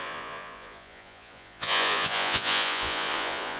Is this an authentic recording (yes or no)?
no